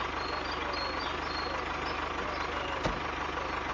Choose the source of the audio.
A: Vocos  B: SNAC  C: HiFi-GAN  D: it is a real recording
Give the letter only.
D